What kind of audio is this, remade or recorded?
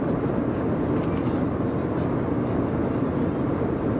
recorded